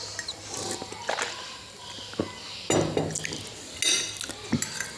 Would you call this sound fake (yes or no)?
no